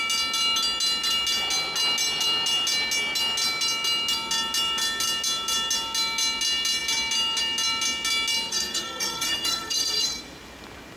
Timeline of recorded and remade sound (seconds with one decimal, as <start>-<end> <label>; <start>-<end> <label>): 0.0-8.5 recorded; 8.5-10.2 remade; 10.2-11.0 recorded